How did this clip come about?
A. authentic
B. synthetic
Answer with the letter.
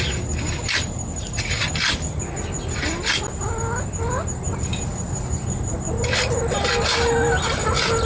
A